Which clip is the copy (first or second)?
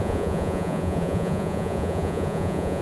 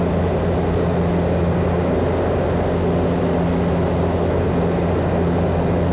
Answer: first